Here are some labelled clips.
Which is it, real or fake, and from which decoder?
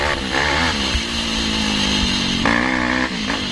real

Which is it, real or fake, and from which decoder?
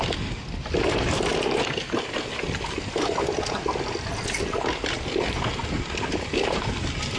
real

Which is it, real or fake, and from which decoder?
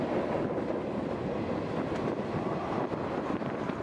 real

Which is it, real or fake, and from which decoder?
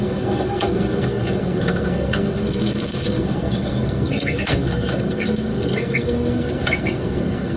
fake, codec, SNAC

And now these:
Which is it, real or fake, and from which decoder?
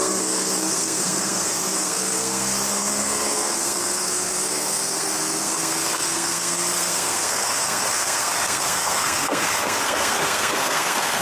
fake, codec, SNAC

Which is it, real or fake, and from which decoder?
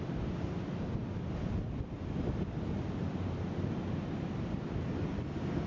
real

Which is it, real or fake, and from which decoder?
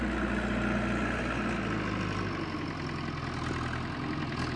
real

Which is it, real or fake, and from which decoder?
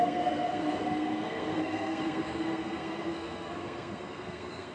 fake, codec, SNAC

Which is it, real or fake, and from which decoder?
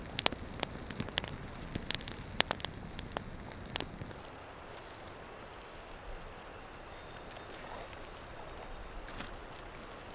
real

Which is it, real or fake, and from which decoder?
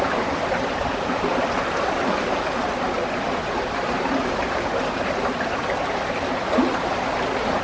real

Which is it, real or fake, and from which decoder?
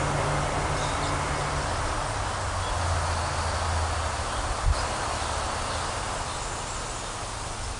real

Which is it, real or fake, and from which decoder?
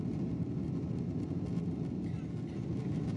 real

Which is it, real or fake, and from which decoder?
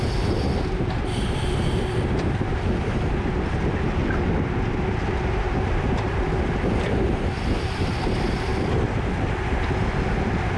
real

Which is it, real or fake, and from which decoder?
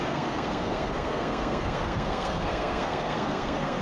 fake, codec, SNAC